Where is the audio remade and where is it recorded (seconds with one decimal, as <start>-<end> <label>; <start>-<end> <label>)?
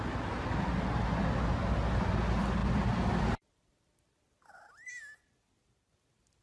0.0-2.6 recorded; 2.6-4.0 remade; 4.0-6.4 recorded